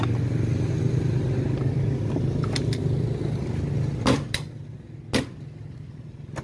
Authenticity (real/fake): real